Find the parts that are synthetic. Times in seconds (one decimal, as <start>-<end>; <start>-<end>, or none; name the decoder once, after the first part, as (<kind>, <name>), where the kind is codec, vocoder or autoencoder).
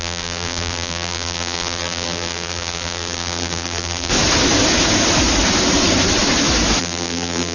0.0-4.1 (vocoder, BigVGAN v2); 6.8-7.5